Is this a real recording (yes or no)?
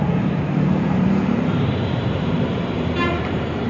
no